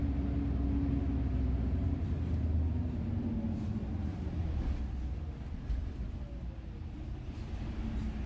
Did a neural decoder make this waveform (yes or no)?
no